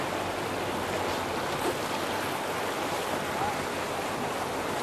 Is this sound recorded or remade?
recorded